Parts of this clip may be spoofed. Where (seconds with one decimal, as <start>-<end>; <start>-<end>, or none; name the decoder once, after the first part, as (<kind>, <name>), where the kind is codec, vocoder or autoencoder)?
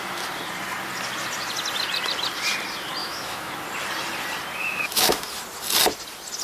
3.0-3.5 (autoencoder, DAC-VAE); 4.6-5.3